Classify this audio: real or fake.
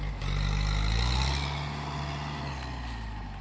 real